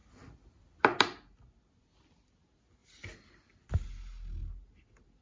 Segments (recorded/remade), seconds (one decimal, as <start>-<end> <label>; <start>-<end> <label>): 0.0-1.0 remade; 1.0-2.8 recorded; 2.8-3.7 remade; 3.7-5.2 recorded